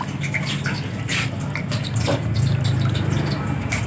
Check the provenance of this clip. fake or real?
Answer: real